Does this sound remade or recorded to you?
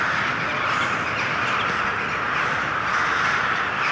recorded